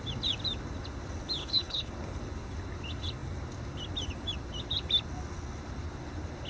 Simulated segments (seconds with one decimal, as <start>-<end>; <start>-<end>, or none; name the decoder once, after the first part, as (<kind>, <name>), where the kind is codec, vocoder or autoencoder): 1.4-1.9 (codec, HILCodec)